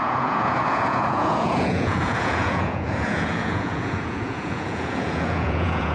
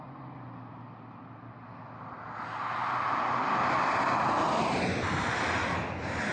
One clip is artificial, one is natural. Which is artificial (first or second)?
first